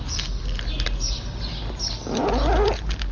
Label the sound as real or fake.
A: real